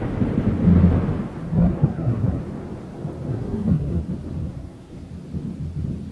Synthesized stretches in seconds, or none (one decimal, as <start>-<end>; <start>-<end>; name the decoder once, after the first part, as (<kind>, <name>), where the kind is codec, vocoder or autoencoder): 1.4-2.4 (codec, SNAC); 3.3-4.0; 4.4-5.1